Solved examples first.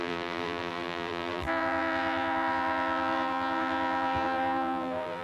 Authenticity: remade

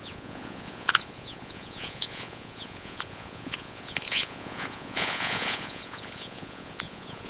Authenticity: remade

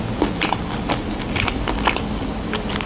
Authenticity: recorded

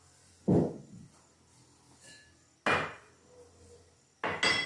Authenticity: recorded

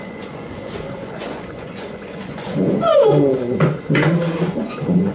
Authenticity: remade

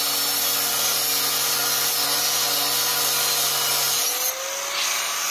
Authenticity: recorded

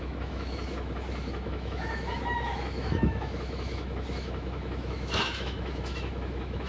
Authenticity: remade